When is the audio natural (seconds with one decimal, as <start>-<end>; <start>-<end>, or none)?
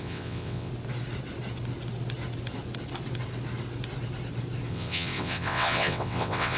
0.7-4.7